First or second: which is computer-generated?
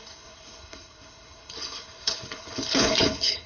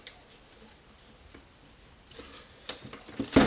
first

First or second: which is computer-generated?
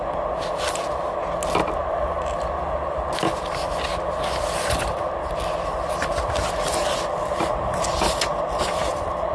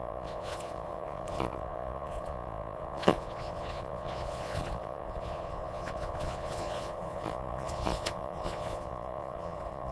second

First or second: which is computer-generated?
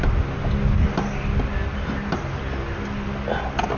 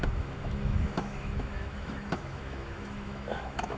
second